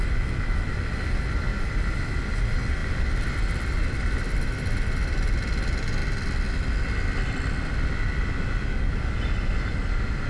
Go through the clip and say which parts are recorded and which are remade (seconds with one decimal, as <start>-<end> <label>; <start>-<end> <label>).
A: 0.0-6.0 recorded; 6.0-6.9 remade; 6.9-10.3 recorded